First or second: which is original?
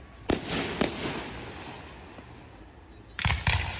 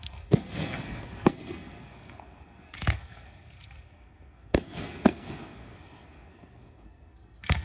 first